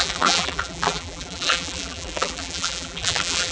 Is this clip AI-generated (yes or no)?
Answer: yes